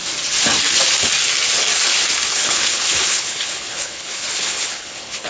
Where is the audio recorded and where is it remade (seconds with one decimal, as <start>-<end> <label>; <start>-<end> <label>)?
0.0-2.3 recorded; 2.3-5.3 remade